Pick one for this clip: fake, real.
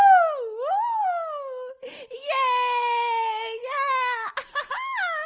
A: real